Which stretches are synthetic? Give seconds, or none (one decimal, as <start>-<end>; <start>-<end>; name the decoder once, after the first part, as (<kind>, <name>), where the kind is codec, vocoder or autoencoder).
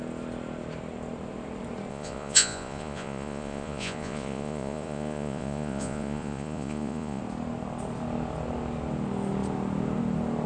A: 1.9-7.2 (vocoder, Vocos)